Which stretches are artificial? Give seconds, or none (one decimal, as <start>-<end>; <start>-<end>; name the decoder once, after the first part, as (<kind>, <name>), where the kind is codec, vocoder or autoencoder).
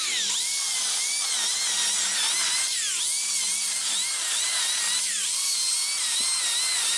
none